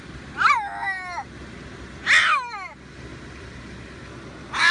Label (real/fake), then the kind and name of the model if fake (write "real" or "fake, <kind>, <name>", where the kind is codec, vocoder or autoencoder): real